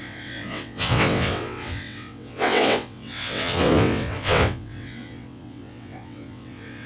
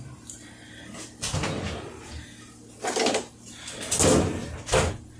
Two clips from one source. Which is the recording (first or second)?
second